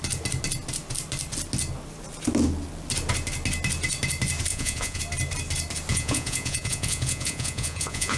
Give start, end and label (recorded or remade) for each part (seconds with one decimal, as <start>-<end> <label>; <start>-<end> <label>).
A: 0.0-4.5 recorded; 4.5-5.0 remade; 5.0-5.9 recorded; 5.9-8.2 remade